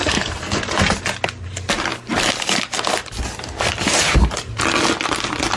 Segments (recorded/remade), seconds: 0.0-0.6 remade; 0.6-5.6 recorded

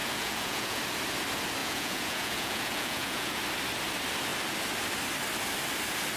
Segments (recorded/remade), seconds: 0.0-0.8 remade; 0.8-1.6 recorded; 1.6-3.4 remade; 3.4-6.2 recorded

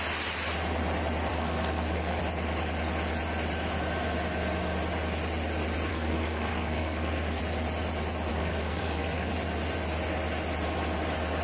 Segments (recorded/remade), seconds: 0.0-1.3 recorded; 1.3-2.2 remade; 2.2-5.9 recorded; 5.9-7.4 remade; 7.4-8.3 recorded; 8.3-9.3 remade; 9.3-11.4 recorded

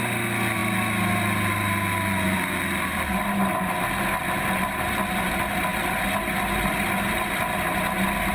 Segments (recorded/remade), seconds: 0.0-8.3 recorded

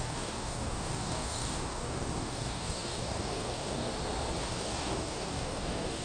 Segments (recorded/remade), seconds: 0.0-3.9 remade; 3.9-4.4 recorded; 4.4-6.0 remade

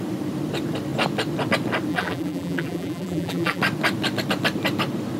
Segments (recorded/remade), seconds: 0.0-1.9 recorded; 1.9-3.6 remade; 3.6-5.2 recorded

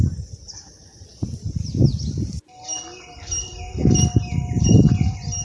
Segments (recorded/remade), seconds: 0.0-5.4 recorded

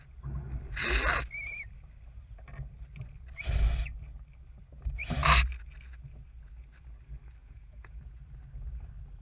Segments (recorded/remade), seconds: 0.0-7.4 recorded; 7.4-8.2 remade; 8.2-9.2 recorded